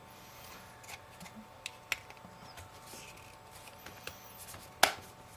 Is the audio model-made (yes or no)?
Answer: no